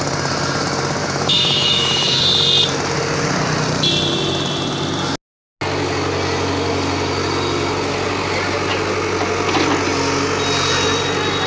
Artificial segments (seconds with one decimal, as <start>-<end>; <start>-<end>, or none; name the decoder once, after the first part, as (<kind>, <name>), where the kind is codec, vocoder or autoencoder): 1.0-2.2 (autoencoder, DAC-VAE)